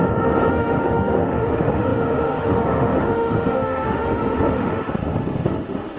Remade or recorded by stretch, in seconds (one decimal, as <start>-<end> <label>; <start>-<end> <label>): 0.0-0.5 recorded; 0.5-6.0 remade